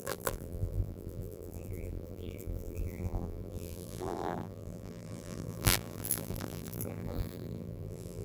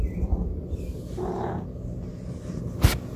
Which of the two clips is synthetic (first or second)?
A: first